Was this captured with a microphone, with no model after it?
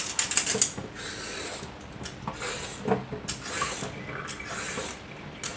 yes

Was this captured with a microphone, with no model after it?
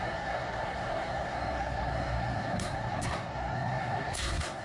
no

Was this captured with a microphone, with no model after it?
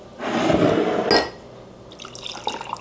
yes